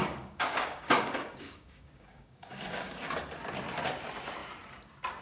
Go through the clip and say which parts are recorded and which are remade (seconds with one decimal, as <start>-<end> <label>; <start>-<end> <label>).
0.0-3.1 remade; 3.1-5.2 recorded